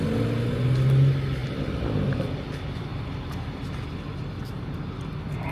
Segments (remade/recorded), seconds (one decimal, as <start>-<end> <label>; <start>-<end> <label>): 0.0-1.4 recorded; 1.4-3.9 remade; 3.9-5.5 recorded